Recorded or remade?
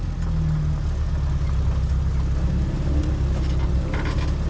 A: recorded